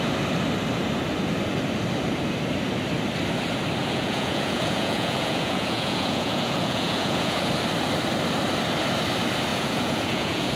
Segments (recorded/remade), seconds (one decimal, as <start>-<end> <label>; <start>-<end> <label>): 0.0-3.8 recorded; 3.8-7.5 remade; 7.5-9.5 recorded; 9.5-10.6 remade